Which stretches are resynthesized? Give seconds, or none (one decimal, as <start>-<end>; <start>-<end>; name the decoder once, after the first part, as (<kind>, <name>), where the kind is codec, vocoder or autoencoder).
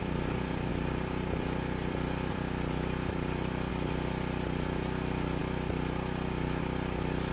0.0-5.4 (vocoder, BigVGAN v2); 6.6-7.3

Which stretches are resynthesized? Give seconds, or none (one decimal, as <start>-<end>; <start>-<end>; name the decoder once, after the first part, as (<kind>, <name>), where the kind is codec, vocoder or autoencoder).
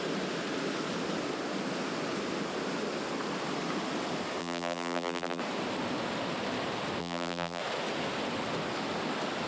4.4-5.4 (vocoder, BigVGAN v2); 7.0-7.6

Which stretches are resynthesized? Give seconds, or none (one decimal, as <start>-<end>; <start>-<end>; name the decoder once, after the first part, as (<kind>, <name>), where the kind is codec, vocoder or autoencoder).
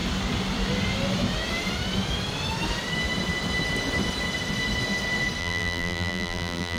5.4-6.8 (vocoder, BigVGAN v2)